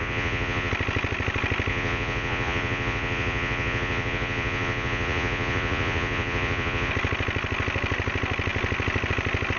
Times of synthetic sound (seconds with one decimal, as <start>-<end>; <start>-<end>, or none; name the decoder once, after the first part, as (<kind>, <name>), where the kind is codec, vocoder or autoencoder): 0.0-0.7 (vocoder, Vocos); 1.7-6.9